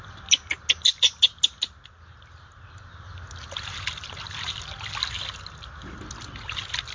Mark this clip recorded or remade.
recorded